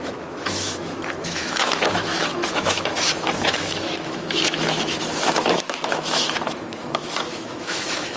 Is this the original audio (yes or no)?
no